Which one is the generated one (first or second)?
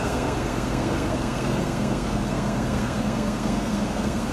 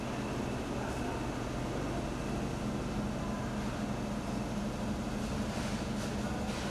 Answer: first